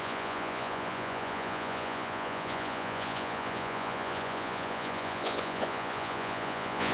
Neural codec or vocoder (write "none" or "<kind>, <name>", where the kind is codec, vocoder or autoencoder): vocoder, Vocos